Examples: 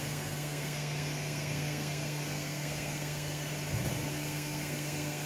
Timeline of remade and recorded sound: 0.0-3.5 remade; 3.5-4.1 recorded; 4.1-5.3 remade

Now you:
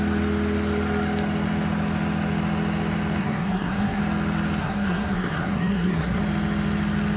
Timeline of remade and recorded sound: 0.0-3.2 recorded; 3.2-4.0 remade; 4.0-4.6 recorded; 4.6-6.2 remade; 6.2-7.2 recorded